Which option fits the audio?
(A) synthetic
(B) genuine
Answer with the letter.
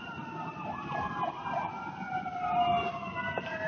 B